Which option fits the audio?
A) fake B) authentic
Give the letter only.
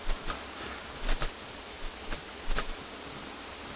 B